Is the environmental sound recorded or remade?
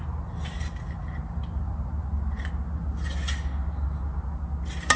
recorded